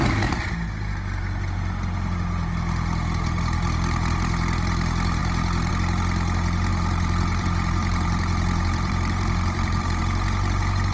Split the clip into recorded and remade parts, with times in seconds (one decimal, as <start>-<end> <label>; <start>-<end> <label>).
0.0-6.7 recorded; 6.7-10.0 remade; 10.0-10.9 recorded